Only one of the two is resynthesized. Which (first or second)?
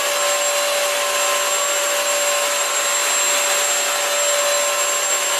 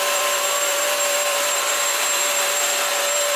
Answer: second